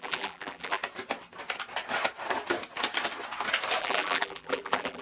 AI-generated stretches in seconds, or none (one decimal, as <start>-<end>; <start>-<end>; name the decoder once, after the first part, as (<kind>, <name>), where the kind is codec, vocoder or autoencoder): 0.0-0.8 (vocoder, BigVGAN v2); 3.8-5.0